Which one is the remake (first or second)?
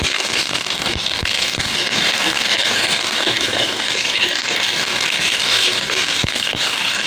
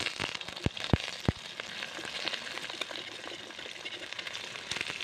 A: first